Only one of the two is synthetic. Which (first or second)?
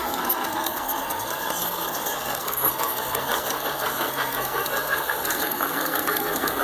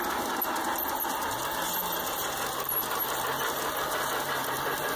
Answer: first